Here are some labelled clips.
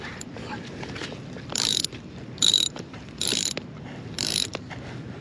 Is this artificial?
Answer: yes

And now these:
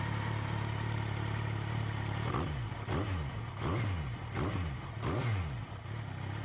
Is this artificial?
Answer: no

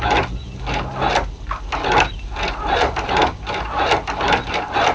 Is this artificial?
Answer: no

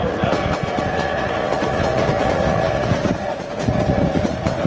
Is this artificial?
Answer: yes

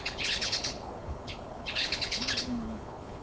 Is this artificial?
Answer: yes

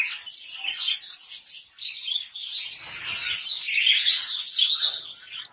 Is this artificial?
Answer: no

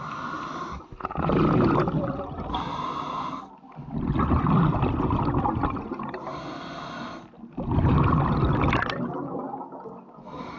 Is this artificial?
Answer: no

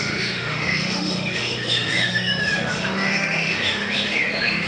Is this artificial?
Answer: yes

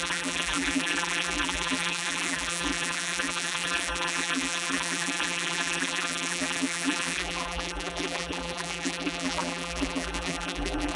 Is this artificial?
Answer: yes